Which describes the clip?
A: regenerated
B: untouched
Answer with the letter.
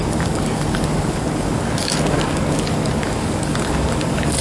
A